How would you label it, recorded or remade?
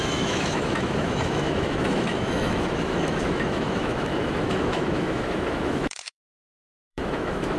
remade